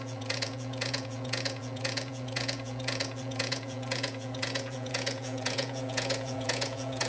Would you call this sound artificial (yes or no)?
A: yes